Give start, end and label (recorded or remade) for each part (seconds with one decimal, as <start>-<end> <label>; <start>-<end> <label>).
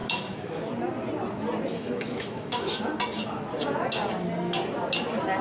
0.0-0.6 remade; 0.6-1.7 recorded; 1.7-2.7 remade; 2.7-5.4 recorded